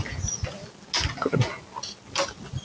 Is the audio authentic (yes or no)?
yes